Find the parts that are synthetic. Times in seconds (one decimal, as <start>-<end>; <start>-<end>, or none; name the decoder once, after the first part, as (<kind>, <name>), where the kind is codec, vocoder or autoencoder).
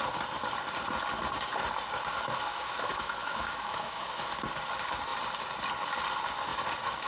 2.5-4.3 (autoencoder, DAC-VAE)